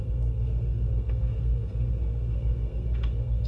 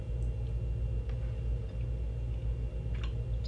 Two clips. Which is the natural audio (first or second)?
second